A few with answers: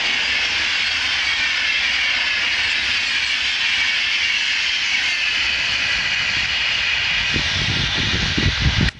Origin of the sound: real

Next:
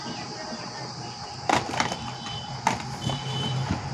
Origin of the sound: fake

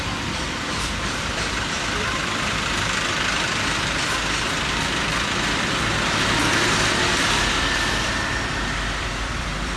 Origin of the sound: fake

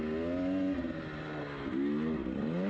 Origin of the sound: real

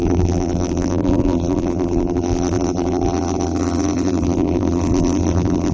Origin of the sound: fake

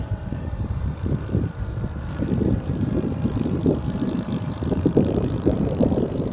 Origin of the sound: fake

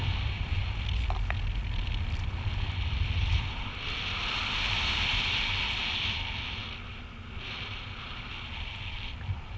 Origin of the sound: real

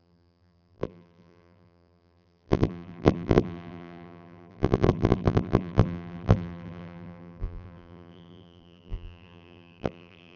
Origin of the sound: fake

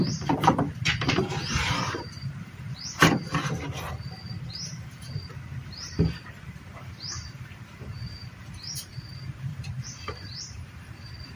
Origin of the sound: fake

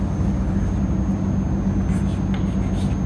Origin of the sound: real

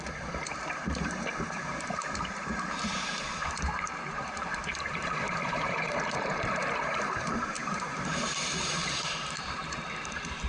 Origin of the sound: fake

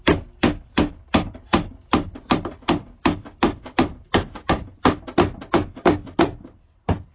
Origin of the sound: fake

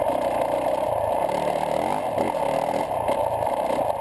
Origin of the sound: real